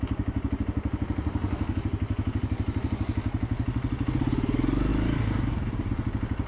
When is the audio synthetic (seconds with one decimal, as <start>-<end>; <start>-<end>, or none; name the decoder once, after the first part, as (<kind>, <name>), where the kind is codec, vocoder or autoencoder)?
none

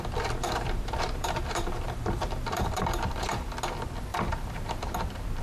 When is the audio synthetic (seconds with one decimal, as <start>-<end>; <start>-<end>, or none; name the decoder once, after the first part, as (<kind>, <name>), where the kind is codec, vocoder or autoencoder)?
0.4-3.6 (vocoder, BigVGAN v2); 4.1-4.9

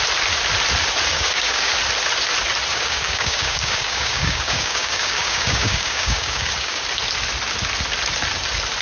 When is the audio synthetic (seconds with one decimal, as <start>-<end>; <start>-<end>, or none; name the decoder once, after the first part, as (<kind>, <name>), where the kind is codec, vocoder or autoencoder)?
1.1-1.7 (codec, DAC); 2.7-6.8

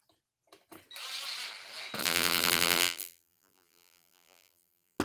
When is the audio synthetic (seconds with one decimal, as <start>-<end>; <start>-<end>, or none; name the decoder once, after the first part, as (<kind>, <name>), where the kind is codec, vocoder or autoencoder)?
2.0-5.0 (vocoder, BigVGAN v2)

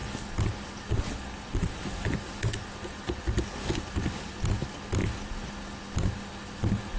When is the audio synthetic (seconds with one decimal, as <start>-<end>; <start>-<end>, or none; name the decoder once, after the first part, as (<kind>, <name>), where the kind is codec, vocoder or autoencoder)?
none